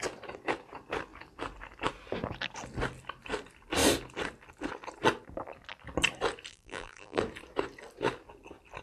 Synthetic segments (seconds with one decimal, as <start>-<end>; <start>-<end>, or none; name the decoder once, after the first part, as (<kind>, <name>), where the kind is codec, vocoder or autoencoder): 6.5-7.2 (vocoder, BigVGAN v2)